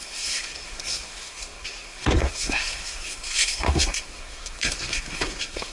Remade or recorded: remade